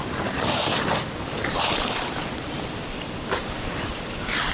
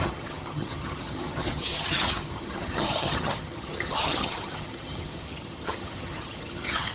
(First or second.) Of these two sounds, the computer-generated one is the second